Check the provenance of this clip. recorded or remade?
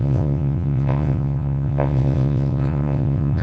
remade